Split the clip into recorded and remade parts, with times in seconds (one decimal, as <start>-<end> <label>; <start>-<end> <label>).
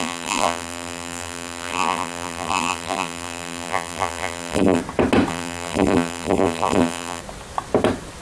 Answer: 0.0-4.8 remade; 4.8-5.3 recorded; 5.3-7.2 remade; 7.2-8.2 recorded